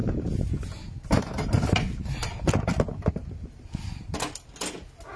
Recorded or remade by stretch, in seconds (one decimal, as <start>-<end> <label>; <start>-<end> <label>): 0.0-5.2 recorded